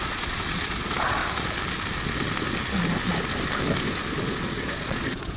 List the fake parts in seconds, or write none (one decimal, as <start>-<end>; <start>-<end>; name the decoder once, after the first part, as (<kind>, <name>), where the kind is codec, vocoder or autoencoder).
0.0-1.2 (vocoder, Vocos); 4.2-5.4